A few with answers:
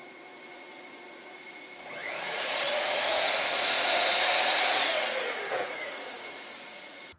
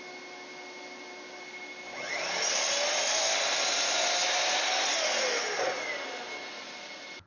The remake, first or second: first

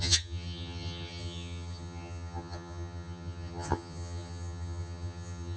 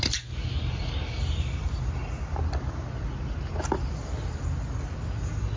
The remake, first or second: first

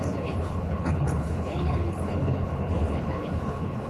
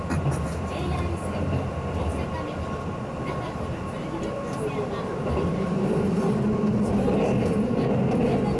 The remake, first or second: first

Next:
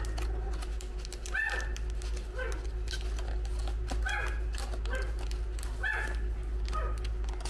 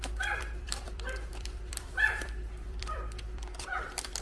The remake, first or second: second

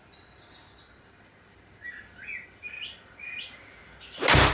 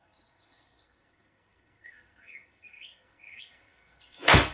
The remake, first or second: second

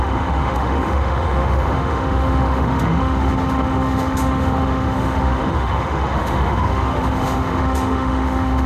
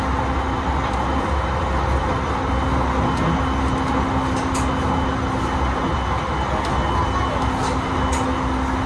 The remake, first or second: first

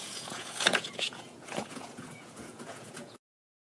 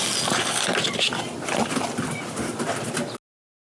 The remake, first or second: first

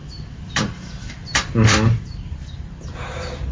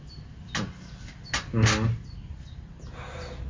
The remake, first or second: first